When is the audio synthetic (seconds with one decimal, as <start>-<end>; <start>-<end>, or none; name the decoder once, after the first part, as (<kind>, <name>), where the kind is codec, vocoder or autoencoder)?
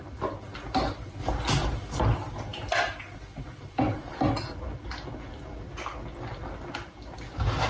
none